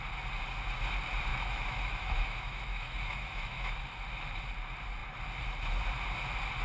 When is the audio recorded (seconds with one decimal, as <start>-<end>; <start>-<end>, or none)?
0.0-1.3; 3.8-6.6